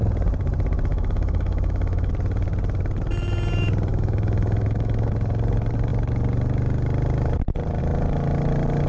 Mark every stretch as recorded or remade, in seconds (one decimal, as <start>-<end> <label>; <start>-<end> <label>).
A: 0.0-0.9 recorded; 0.9-2.1 remade; 2.1-3.9 recorded; 3.9-5.1 remade; 5.1-8.9 recorded